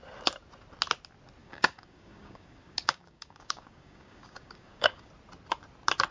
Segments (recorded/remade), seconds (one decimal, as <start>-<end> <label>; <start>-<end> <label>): 0.0-1.4 recorded; 1.4-5.1 remade; 5.1-6.1 recorded